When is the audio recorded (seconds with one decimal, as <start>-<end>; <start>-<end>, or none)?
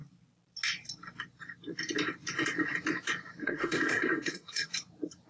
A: 0.0-3.4; 4.7-5.3